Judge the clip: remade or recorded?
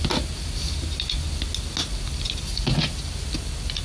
recorded